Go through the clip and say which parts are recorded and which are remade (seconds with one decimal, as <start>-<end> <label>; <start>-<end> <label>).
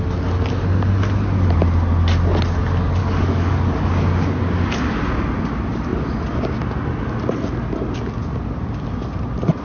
0.0-3.0 recorded; 3.0-3.9 remade; 3.9-9.6 recorded